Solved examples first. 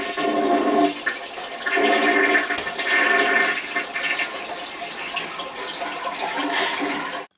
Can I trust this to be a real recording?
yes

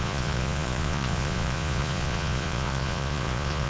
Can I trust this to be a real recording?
no